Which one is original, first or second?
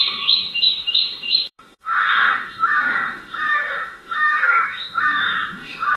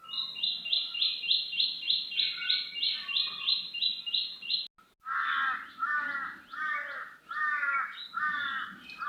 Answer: second